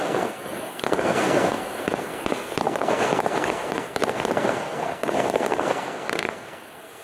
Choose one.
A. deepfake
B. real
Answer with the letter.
A